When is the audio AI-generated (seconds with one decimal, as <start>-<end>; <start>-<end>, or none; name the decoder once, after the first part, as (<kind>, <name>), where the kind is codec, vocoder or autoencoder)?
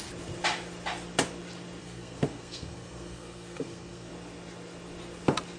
1.8-4.1 (codec, SNAC)